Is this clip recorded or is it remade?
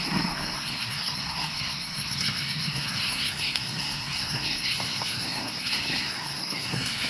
remade